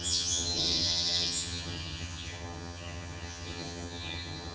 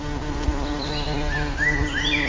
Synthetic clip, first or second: first